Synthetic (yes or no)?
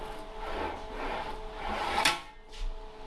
no